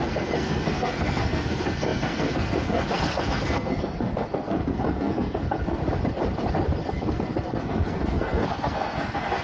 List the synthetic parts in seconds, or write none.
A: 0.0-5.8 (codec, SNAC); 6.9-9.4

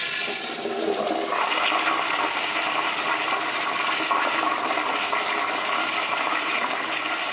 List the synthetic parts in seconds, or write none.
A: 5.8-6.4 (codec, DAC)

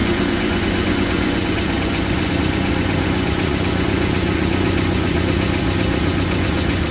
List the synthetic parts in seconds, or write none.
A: 0.0-6.9 (vocoder, Vocos)

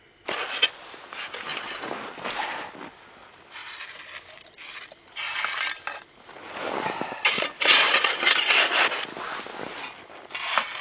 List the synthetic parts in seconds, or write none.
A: 3.6-8.5 (vocoder, BigVGAN v2)

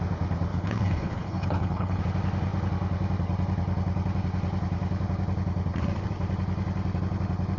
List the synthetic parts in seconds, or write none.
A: 0.5-2.0 (codec, HILCodec)

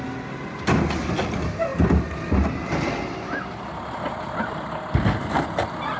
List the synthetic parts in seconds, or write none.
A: none